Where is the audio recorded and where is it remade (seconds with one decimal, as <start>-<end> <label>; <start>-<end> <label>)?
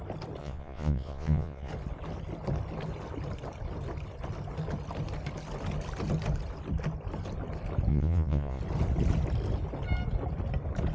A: 0.0-0.4 recorded; 0.4-1.7 remade; 1.7-7.9 recorded; 7.9-8.6 remade; 8.6-10.9 recorded